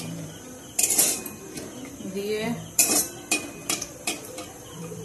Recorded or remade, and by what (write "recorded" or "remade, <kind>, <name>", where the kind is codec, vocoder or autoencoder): remade, vocoder, BigVGAN v2